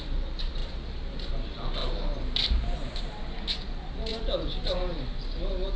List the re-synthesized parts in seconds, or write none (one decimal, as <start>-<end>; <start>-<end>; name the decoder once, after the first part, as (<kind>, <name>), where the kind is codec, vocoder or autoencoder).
none